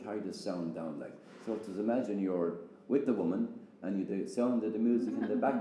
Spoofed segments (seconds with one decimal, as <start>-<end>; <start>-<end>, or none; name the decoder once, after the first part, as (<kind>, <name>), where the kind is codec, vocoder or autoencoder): 0.4-3.2 (autoencoder, DAC-VAE)